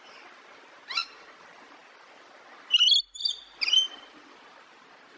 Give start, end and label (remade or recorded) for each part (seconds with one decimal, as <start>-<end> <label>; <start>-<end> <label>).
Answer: 0.0-5.2 recorded